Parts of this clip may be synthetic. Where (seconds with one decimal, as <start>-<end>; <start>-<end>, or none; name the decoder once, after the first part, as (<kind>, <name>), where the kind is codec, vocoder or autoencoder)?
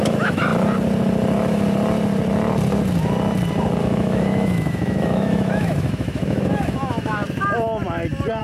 0.0-0.5 (autoencoder, DAC-VAE); 3.8-7.2